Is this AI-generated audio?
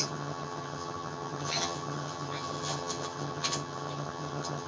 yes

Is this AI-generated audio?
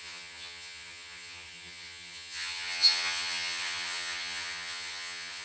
yes